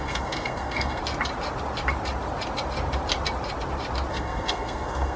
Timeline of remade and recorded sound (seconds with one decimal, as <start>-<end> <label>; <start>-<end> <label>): 0.0-1.0 remade; 1.0-4.1 recorded; 4.1-5.2 remade